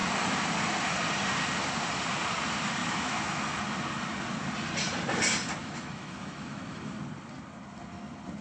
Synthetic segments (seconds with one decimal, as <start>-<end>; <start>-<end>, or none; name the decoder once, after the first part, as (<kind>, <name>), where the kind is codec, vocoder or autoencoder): 2.8-3.6 (autoencoder, DAC-VAE); 5.6-7.0